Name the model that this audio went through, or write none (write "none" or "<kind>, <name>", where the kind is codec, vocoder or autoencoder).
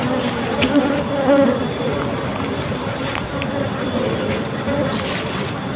none